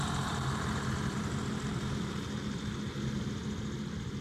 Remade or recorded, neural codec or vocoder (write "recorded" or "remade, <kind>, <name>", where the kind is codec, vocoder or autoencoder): recorded